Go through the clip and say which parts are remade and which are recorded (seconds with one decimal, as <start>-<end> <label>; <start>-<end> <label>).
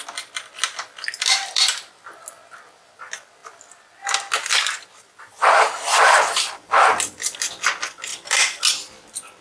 0.0-9.4 recorded